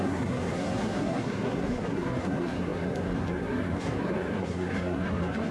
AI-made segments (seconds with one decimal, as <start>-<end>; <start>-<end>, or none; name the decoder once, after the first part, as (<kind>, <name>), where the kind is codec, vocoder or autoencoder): 0.0-5.5 (codec, SNAC)